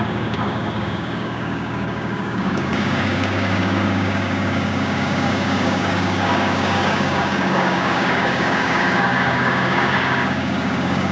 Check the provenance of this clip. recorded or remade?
remade